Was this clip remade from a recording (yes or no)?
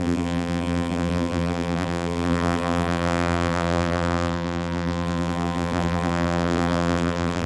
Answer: yes